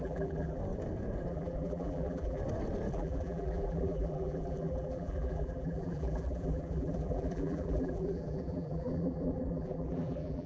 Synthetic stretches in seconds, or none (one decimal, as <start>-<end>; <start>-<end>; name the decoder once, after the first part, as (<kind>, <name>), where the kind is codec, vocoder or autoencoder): 0.0-0.6 (vocoder, BigVGAN v2); 1.3-2.4; 2.9-10.5